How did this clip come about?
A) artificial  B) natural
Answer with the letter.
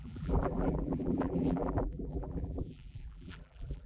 A